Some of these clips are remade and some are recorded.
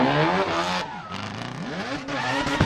recorded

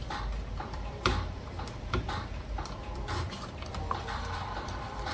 remade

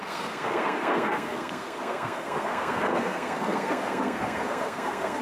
remade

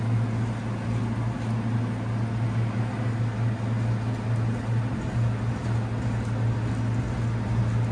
recorded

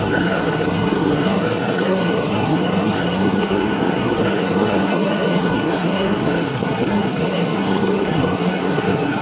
remade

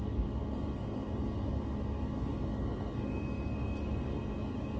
remade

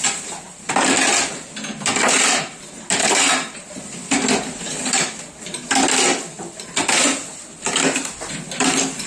recorded